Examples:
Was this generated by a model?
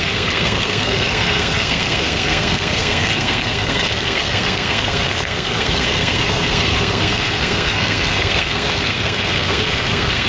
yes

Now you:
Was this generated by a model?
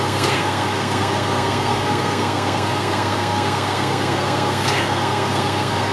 yes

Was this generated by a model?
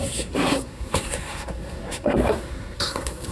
yes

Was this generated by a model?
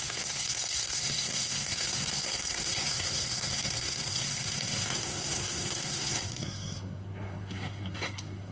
yes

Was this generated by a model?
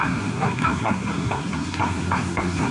yes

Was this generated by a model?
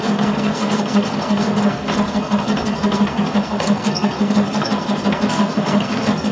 yes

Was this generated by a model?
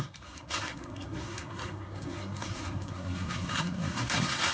yes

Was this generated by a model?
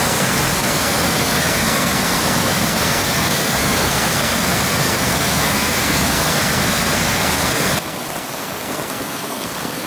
yes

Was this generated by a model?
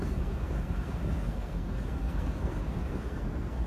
yes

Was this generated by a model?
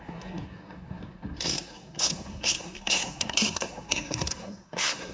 yes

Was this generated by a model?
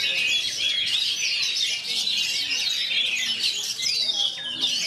no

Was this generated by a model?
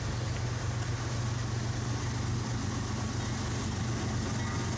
no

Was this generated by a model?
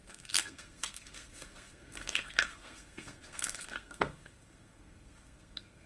yes